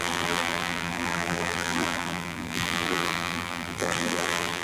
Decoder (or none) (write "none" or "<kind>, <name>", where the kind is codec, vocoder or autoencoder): vocoder, BigVGAN v2